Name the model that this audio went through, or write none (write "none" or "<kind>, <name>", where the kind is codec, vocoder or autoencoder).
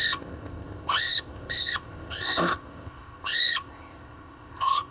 codec, ZipCodec